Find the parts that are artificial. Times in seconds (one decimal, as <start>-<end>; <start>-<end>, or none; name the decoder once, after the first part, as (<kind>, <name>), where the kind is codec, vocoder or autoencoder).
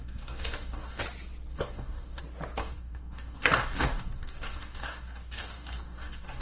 0.0-1.0 (codec, DAC); 1.5-2.2; 2.6-6.4